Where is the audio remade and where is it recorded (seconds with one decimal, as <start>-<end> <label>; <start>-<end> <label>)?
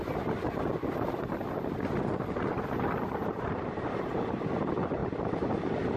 0.0-3.2 recorded; 3.2-4.1 remade; 4.1-5.0 recorded; 5.0-5.6 remade; 5.6-6.0 recorded